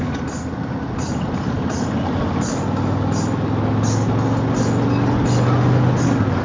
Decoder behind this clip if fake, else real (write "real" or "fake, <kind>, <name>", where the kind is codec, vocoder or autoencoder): real